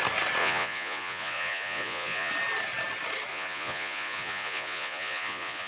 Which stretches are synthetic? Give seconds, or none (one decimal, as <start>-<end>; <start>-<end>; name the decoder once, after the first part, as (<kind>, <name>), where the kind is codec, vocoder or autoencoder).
0.4-2.3 (vocoder, Vocos); 3.3-5.7